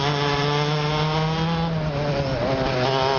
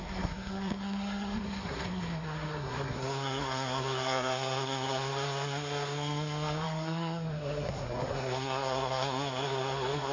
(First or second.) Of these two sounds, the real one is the first